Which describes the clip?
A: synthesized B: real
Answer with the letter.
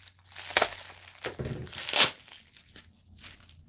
B